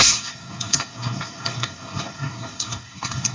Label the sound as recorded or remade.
remade